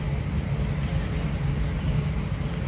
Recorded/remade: remade